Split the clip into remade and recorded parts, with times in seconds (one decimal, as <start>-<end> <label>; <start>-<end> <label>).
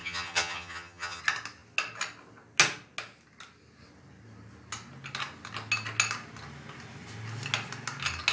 0.0-1.2 remade; 1.2-8.3 recorded